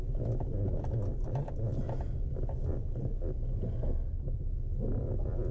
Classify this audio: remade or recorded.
recorded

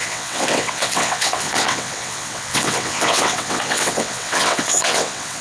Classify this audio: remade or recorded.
remade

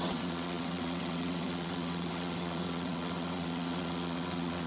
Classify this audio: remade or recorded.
remade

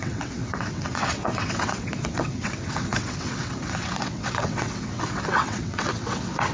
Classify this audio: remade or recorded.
remade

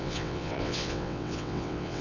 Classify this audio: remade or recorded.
remade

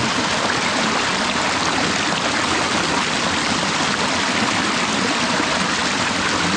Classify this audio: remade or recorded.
recorded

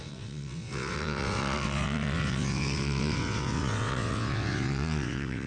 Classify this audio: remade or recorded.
remade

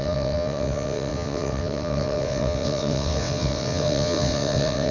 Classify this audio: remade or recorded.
remade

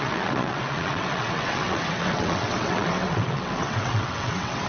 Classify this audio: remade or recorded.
remade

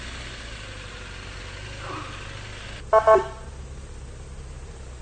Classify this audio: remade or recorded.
recorded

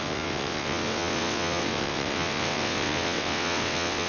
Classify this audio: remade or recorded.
remade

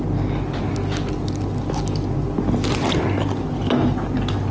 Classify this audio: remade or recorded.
recorded